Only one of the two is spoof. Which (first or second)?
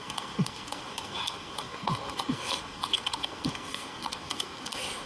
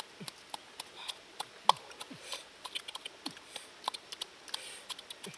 first